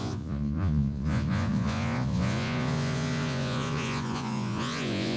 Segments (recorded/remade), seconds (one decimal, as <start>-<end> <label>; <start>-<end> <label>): 0.0-5.2 remade